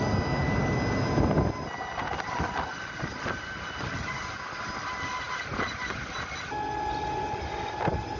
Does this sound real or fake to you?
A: real